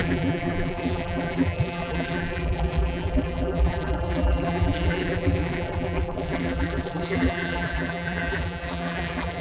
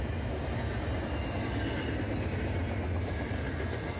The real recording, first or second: second